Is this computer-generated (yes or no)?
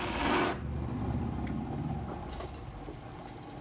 no